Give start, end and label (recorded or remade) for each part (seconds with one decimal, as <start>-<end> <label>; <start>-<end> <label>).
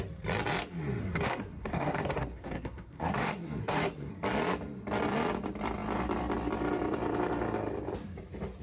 0.0-1.0 recorded; 1.0-4.1 remade; 4.1-8.6 recorded